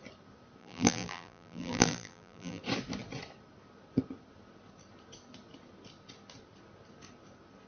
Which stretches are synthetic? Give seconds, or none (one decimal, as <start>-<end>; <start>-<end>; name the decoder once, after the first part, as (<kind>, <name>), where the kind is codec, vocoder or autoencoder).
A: 0.6-2.6 (vocoder, BigVGAN v2)